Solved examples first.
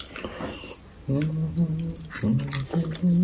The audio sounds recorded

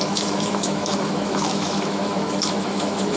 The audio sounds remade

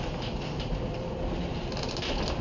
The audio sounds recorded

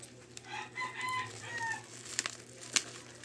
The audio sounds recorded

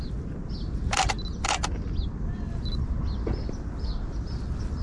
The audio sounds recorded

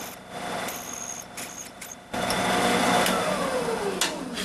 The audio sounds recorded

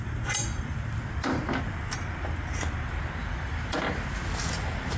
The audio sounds recorded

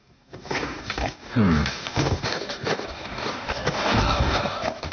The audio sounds remade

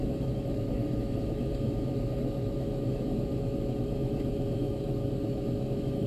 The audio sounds remade